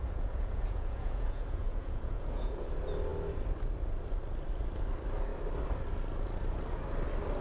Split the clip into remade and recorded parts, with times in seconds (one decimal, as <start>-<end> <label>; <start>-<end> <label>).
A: 0.0-2.7 remade; 2.7-7.4 recorded